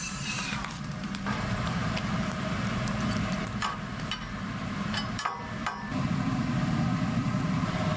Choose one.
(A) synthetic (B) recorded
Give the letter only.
A